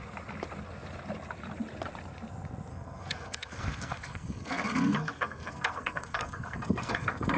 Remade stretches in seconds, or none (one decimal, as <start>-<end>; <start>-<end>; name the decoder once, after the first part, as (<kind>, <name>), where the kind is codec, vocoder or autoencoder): 2.7-7.4 (codec, SNAC)